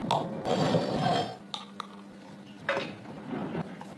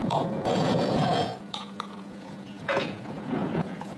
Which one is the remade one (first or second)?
second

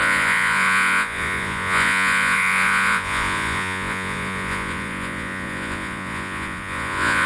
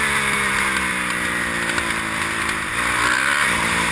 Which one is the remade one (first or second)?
first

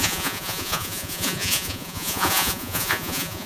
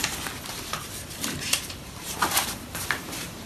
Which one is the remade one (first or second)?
first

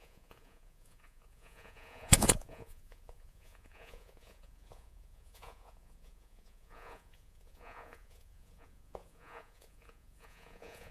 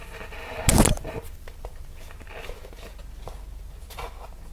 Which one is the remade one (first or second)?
first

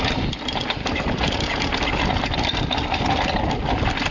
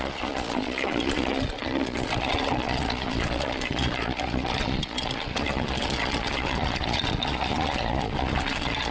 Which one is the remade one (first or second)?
second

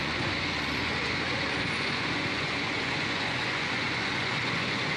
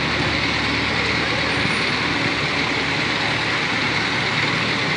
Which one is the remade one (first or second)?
first